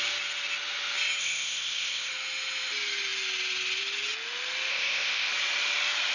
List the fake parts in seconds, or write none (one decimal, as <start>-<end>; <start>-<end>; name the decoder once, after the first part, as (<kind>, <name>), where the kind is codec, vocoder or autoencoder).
1.2-2.1 (codec, ZipCodec); 4.7-5.3